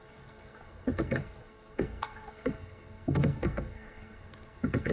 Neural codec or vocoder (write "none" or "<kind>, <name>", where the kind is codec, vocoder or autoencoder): codec, SNAC